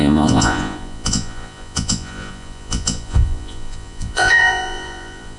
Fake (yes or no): yes